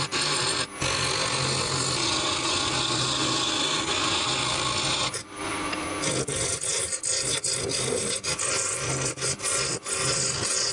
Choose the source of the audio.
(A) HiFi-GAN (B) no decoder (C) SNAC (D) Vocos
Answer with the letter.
B